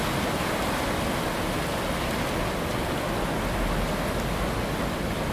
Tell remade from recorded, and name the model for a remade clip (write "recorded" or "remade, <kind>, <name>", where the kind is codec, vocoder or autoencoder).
recorded